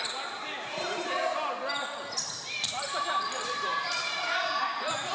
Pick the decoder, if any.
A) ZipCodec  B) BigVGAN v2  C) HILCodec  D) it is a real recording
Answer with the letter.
B